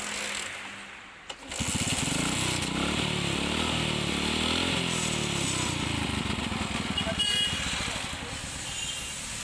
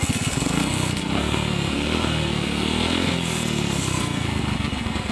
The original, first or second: first